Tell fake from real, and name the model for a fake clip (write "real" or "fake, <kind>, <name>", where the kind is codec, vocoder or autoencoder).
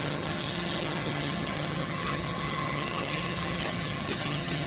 fake, vocoder, HiFi-GAN